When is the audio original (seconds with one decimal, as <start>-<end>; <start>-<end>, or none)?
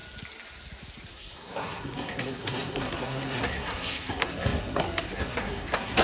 0.0-1.1